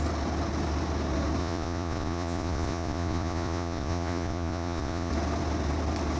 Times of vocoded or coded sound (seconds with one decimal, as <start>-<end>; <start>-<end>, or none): 1.4-5.1